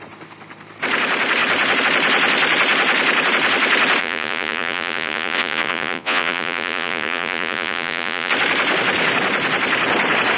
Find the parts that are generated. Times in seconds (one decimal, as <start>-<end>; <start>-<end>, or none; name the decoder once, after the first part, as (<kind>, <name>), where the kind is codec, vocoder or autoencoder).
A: 4.0-8.3 (vocoder, Vocos)